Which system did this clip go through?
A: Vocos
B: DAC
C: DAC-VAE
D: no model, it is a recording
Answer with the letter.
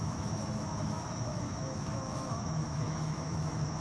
C